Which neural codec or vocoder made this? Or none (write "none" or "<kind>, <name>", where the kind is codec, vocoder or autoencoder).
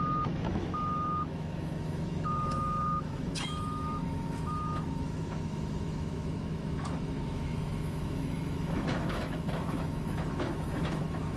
autoencoder, DAC-VAE